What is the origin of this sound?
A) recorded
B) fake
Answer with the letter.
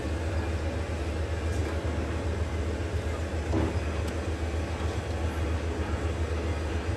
A